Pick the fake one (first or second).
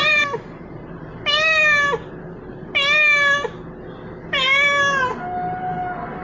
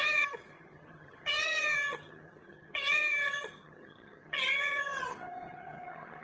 second